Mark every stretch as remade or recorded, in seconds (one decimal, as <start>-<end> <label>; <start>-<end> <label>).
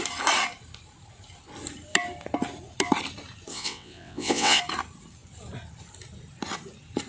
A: 0.0-3.5 recorded; 3.5-4.6 remade; 4.6-7.1 recorded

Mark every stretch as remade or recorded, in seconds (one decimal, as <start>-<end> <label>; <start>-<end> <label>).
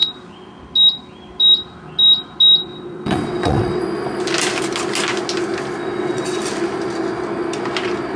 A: 0.0-2.7 recorded; 2.7-3.8 remade; 3.8-5.8 recorded; 5.8-6.4 remade; 6.4-8.2 recorded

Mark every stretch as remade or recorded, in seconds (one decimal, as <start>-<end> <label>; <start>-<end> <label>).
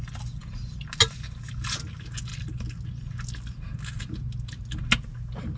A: 0.0-5.6 recorded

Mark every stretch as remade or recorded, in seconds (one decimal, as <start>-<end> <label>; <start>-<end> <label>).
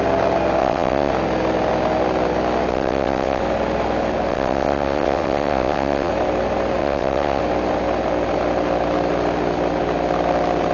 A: 0.0-0.6 recorded; 0.6-1.1 remade; 1.1-2.7 recorded; 2.7-3.4 remade; 3.4-4.3 recorded; 4.3-6.1 remade; 6.1-6.8 recorded; 6.8-7.4 remade; 7.4-10.7 recorded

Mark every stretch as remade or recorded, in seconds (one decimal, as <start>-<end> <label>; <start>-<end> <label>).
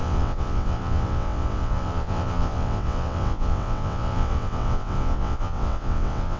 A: 0.0-6.4 remade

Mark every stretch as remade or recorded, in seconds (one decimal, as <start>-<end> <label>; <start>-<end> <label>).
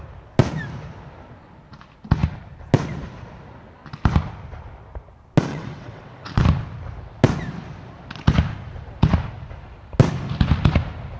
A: 0.0-5.5 recorded; 5.5-6.4 remade; 6.4-11.2 recorded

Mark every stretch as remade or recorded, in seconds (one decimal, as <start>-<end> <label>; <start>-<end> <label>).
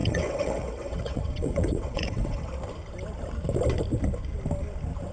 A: 0.0-2.5 remade; 2.5-5.1 recorded